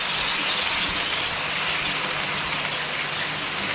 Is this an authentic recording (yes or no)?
yes